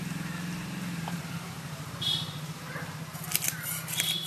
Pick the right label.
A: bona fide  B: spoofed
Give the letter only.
A